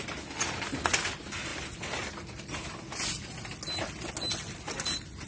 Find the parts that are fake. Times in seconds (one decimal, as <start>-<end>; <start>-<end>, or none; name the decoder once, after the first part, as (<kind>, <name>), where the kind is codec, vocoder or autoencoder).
none